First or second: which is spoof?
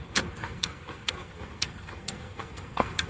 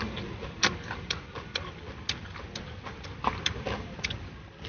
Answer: first